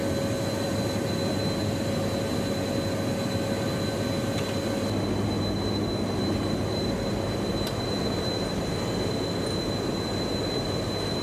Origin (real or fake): real